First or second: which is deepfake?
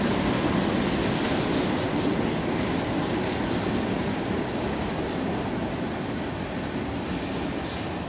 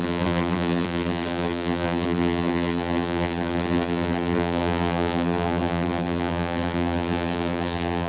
second